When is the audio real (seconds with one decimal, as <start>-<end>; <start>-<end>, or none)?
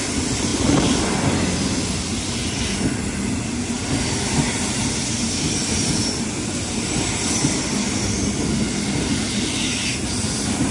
0.0-10.7